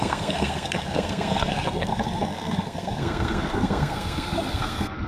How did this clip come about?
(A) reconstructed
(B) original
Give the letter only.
A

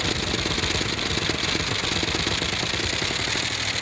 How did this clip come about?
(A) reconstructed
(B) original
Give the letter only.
B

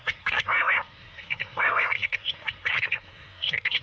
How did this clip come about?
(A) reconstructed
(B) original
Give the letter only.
A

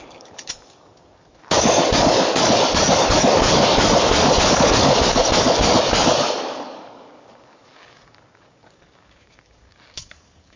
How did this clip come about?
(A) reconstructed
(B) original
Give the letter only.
A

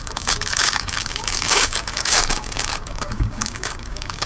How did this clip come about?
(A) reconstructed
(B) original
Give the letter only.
A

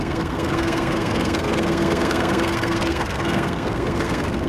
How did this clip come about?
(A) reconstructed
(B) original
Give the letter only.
A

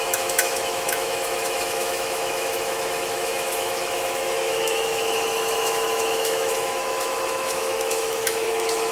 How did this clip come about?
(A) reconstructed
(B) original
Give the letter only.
A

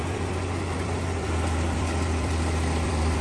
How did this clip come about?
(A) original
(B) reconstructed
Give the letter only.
B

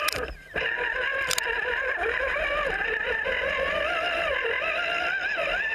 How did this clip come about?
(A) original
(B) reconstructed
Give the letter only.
A